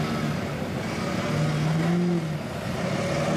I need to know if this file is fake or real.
real